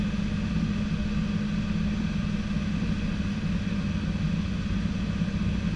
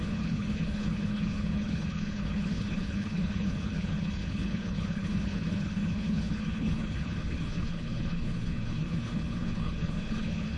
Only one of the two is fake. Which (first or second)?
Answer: second